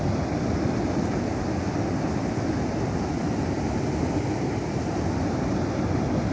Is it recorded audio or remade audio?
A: recorded